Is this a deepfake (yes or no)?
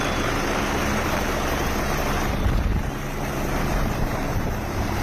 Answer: yes